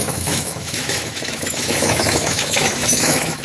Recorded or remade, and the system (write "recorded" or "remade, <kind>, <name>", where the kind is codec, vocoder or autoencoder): remade, autoencoder, DAC-VAE